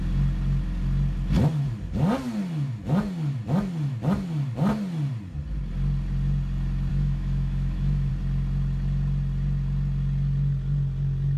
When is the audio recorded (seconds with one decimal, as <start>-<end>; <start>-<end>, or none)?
0.0-6.9; 8.1-11.4